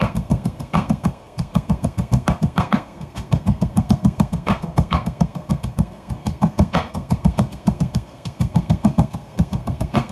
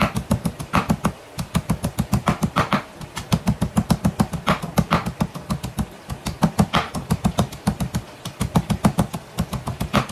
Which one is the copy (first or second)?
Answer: first